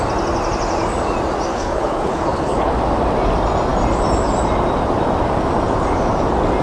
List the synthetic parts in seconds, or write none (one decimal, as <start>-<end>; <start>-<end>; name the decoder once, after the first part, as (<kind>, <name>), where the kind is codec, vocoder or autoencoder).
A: 1.5-2.7 (codec, HILCodec)